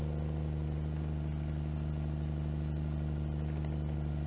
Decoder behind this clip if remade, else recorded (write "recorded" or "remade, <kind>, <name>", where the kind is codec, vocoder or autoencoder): recorded